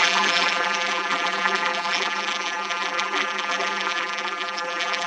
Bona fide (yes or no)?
no